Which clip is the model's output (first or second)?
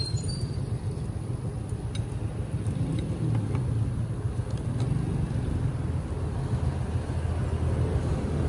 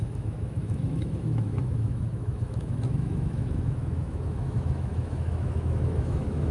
second